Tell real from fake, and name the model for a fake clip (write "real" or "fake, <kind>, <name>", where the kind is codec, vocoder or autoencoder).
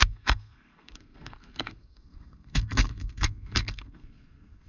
fake, codec, SNAC